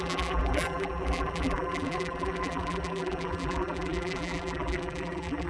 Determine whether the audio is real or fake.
fake